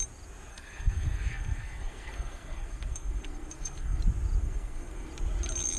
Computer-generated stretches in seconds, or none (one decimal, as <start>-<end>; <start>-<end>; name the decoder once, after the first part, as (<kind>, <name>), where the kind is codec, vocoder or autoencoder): 0.5-4.0 (codec, SNAC); 4.4-5.1